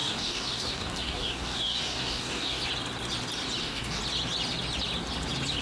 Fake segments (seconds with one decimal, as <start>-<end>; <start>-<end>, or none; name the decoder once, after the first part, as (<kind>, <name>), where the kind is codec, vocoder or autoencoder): 0.0-2.6 (codec, DAC); 3.6-4.0